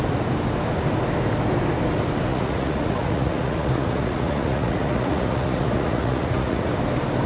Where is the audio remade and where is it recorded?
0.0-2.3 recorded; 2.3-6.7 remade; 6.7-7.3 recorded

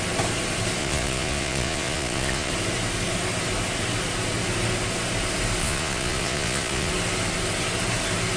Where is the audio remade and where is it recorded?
0.0-0.8 recorded; 0.8-2.5 remade; 2.5-5.6 recorded; 5.6-6.9 remade; 6.9-8.4 recorded

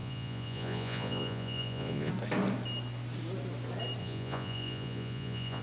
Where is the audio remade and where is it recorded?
0.0-2.1 remade; 2.1-4.0 recorded; 4.0-5.6 remade

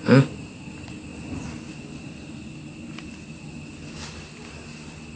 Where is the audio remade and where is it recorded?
0.0-5.2 recorded

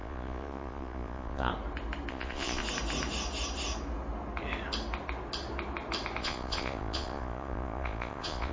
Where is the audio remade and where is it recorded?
0.0-1.5 remade; 1.5-2.1 recorded; 2.1-2.6 remade; 2.6-6.2 recorded; 6.2-8.5 remade

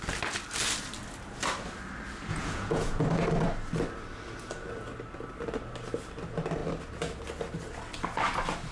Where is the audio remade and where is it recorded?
0.0-2.3 recorded; 2.3-3.0 remade; 3.0-8.7 recorded